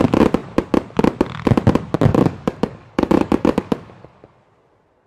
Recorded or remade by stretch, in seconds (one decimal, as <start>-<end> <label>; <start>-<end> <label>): 0.0-2.1 recorded; 2.1-4.1 remade; 4.1-5.1 recorded